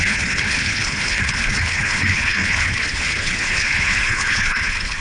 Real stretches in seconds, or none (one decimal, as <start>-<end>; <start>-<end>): none